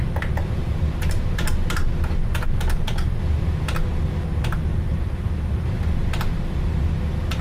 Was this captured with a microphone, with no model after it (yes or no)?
yes